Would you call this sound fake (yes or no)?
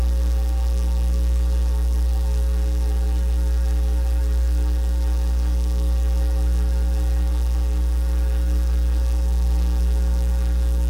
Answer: yes